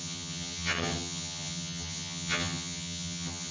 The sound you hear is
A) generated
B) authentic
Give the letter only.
A